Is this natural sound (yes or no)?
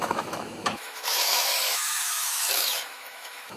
no